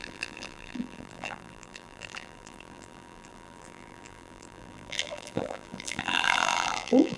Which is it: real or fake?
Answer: fake